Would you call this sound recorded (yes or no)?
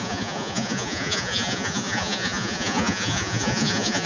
no